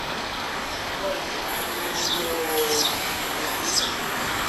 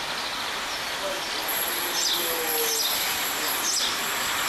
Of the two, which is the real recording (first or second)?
second